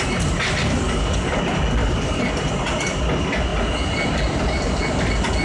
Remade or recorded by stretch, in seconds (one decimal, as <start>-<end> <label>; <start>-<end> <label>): 0.0-0.6 recorded; 0.6-1.4 remade; 1.4-1.8 recorded; 1.8-2.3 remade; 2.3-5.4 recorded